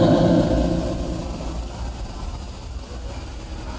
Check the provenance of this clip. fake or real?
real